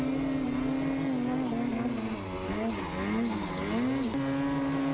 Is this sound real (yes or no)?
yes